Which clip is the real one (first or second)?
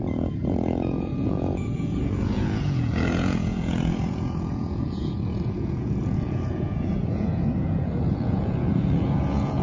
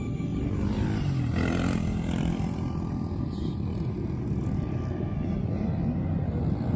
second